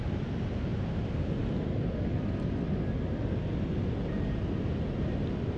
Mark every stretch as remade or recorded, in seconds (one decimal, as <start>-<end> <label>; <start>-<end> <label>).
0.0-5.6 recorded